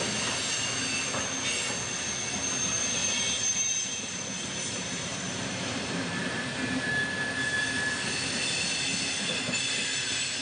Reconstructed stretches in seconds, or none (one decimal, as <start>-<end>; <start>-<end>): 3.0-6.9